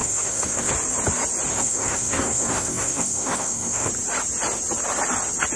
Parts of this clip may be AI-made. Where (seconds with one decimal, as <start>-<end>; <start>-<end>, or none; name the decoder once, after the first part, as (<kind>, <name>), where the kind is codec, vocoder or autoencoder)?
0.0-0.7 (codec, SNAC); 1.5-3.9